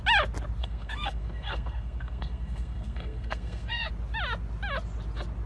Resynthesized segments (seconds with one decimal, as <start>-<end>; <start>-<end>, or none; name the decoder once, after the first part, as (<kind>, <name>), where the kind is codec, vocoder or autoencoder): 0.6-3.9 (codec, SNAC)